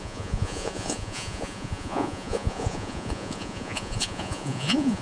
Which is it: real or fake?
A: fake